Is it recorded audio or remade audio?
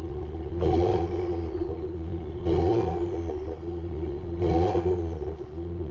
remade